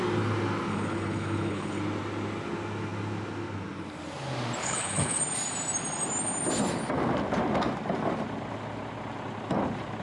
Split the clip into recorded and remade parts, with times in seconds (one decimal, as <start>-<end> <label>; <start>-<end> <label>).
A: 0.0-0.7 recorded; 0.7-1.8 remade; 1.8-4.6 recorded; 4.6-5.2 remade; 5.2-10.0 recorded